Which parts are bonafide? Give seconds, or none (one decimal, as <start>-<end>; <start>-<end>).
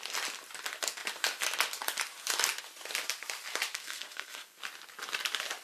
0.0-3.7; 4.6-5.6